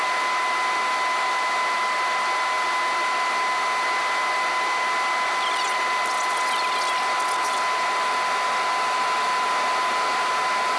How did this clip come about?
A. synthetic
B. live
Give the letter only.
B